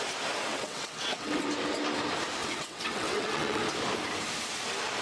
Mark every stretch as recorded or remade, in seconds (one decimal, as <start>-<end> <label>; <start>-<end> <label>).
0.0-0.5 recorded; 0.5-1.4 remade; 1.4-2.4 recorded; 2.4-3.6 remade; 3.6-5.0 recorded